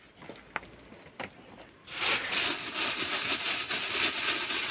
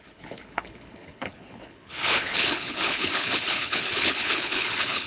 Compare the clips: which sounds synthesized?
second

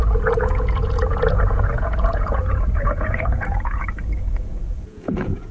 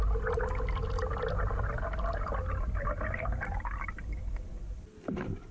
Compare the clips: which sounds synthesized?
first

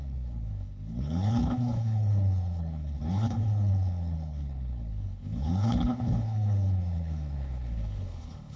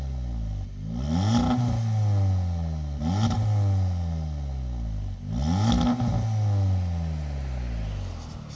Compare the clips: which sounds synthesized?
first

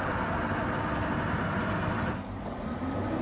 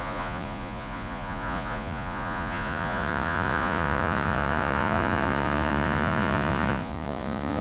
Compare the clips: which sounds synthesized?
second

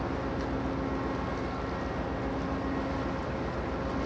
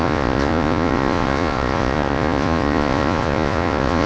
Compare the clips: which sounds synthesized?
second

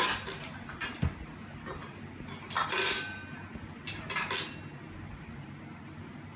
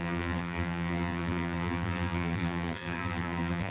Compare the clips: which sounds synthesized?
second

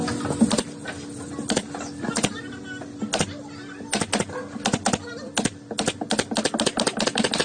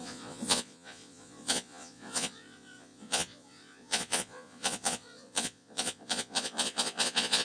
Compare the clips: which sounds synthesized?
second